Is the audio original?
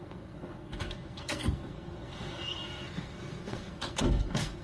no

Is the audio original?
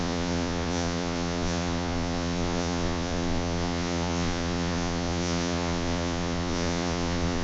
no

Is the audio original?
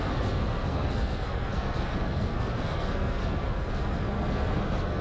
no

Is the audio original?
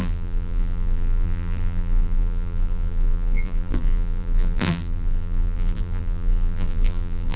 no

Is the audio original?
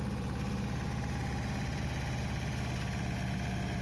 yes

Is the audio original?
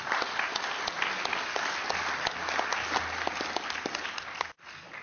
yes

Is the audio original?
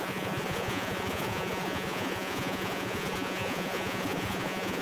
no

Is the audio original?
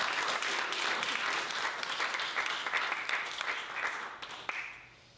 yes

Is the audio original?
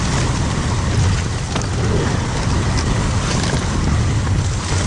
yes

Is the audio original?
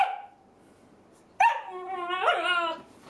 yes